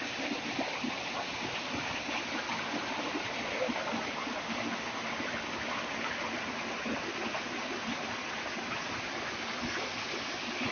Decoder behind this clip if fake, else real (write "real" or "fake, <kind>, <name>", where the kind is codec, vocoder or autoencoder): real